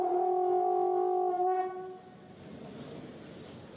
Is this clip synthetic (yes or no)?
no